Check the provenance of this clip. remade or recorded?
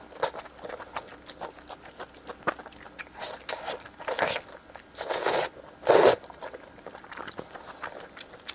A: recorded